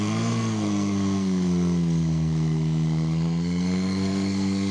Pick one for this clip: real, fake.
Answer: fake